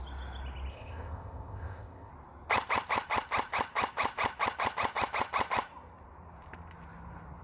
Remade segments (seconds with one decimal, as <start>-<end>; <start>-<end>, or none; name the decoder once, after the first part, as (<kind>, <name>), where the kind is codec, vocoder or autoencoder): 0.7-2.1 (codec, ZipCodec)